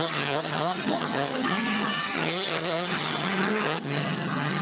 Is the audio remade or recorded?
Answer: remade